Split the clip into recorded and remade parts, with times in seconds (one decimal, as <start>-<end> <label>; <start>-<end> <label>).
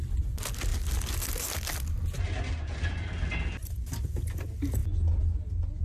0.0-5.8 recorded